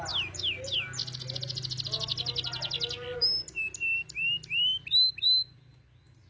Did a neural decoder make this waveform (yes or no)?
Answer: no